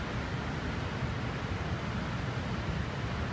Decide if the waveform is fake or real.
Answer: real